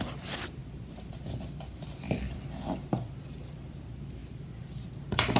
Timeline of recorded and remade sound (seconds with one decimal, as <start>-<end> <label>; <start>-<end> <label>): 0.0-0.6 recorded; 0.6-3.8 remade; 3.8-4.2 recorded; 4.2-5.0 remade; 5.0-5.4 recorded

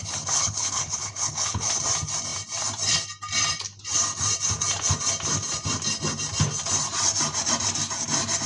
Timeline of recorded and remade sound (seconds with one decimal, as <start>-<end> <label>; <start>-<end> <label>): 0.0-1.7 remade; 1.7-8.5 recorded